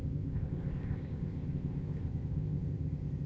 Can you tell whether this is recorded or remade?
remade